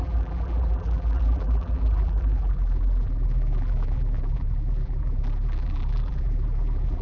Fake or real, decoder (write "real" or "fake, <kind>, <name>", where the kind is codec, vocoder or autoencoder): fake, vocoder, BigVGAN v2